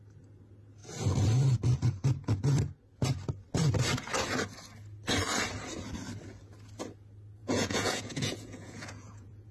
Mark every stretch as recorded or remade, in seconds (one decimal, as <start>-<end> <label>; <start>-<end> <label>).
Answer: 0.0-7.4 recorded; 7.4-9.5 remade